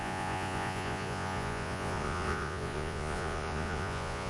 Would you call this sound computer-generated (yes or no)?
yes